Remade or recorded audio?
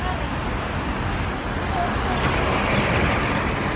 recorded